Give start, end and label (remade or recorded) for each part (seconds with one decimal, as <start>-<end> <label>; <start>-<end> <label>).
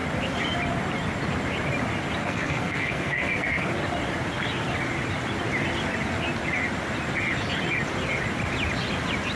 0.0-2.2 recorded; 2.2-3.7 remade; 3.7-9.4 recorded